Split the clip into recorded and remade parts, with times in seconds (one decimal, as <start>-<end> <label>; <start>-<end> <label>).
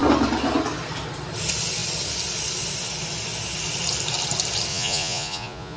0.0-4.7 recorded; 4.7-5.8 remade